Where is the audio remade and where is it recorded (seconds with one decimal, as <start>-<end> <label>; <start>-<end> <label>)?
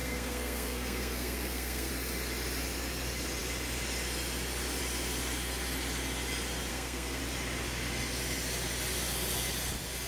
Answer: 0.0-1.9 remade; 1.9-6.7 recorded; 6.7-7.2 remade; 7.2-10.1 recorded